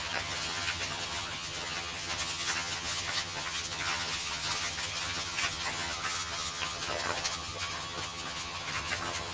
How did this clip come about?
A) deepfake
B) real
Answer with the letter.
A